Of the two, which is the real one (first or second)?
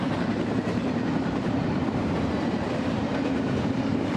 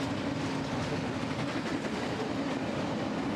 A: second